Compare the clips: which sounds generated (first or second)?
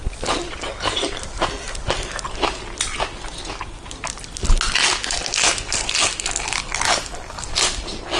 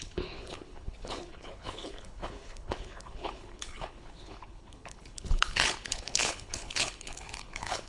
second